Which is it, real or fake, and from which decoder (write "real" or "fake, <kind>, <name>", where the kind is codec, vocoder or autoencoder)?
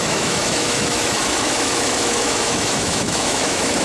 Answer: fake, autoencoder, DAC-VAE